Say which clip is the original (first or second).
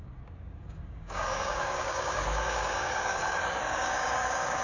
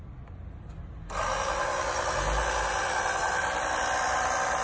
second